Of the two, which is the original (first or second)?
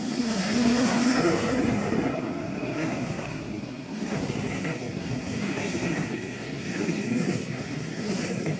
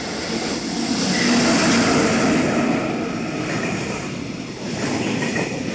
second